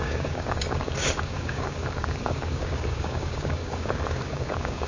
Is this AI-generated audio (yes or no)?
yes